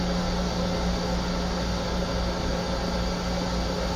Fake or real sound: real